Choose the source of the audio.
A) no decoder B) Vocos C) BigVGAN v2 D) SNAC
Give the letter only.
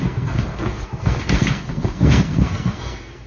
D